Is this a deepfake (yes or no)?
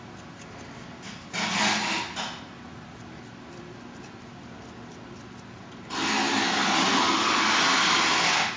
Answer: no